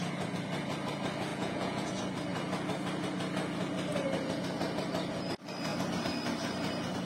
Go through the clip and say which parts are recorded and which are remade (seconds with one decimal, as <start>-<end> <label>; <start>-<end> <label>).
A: 0.0-1.3 recorded; 1.3-1.9 remade; 1.9-7.1 recorded